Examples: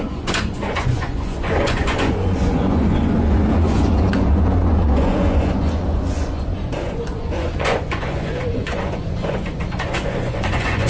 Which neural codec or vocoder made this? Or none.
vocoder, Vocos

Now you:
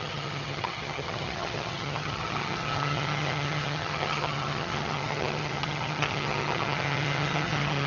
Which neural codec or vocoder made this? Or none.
vocoder, HiFi-GAN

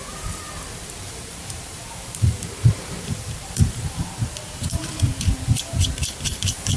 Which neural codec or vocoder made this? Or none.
vocoder, BigVGAN v2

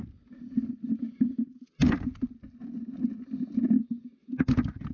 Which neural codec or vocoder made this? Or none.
none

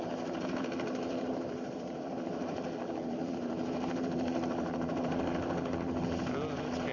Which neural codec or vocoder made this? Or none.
vocoder, BigVGAN v2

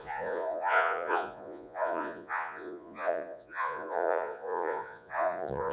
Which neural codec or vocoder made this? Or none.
vocoder, Vocos